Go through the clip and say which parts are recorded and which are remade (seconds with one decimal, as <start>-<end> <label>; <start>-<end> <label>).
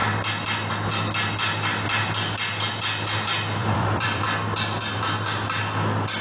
0.0-3.6 recorded; 3.6-4.2 remade; 4.2-6.2 recorded